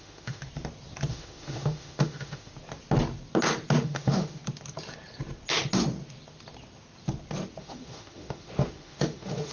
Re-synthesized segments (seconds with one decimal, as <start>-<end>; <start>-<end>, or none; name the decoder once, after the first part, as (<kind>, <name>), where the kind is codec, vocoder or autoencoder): 0.0-0.4 (autoencoder, DAC-VAE); 1.1-2.5; 3.8-4.4; 7.6-9.5